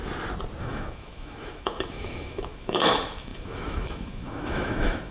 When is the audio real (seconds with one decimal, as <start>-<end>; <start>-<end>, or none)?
0.0-0.6

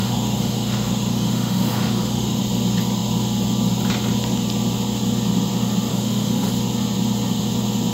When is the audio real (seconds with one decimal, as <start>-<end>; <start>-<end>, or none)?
2.4-5.9; 6.5-7.9

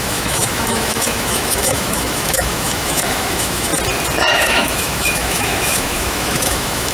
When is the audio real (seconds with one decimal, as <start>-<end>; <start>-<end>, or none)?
3.7-4.3

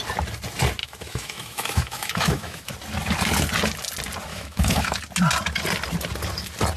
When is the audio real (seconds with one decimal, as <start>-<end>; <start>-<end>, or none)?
0.0-0.8; 2.7-4.3; 5.0-6.8

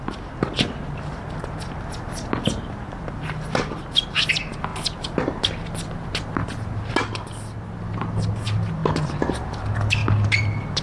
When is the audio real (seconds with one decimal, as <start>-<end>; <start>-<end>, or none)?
0.0-10.8

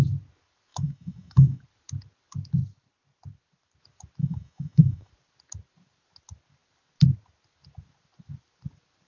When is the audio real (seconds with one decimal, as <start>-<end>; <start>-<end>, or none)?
0.0-0.7; 1.6-4.2; 5.1-9.1

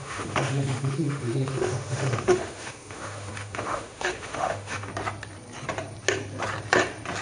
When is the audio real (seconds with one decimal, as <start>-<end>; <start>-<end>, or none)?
4.9-7.2

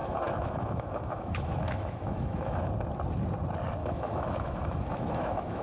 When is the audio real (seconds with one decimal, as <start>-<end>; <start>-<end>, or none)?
2.7-3.8